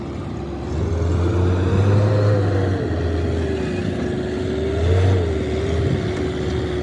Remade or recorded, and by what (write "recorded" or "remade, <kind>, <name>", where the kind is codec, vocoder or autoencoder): recorded